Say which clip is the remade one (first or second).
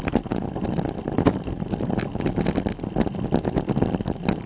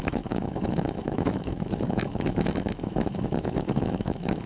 second